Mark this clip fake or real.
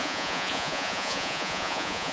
fake